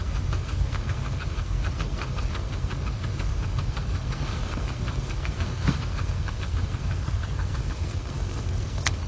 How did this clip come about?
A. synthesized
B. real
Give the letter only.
A